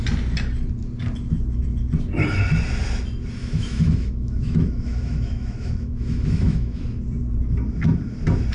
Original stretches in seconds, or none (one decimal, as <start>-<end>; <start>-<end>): 0.0-3.4; 6.8-8.5